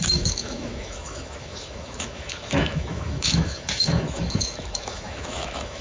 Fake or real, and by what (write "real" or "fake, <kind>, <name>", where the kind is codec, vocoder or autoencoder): fake, autoencoder, DAC-VAE